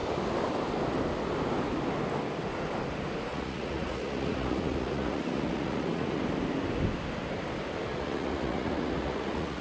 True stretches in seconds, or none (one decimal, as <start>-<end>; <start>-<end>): 0.0-3.3; 6.2-7.9